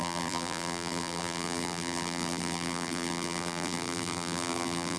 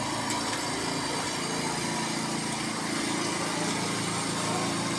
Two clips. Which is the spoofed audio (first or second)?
first